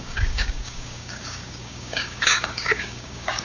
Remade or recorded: remade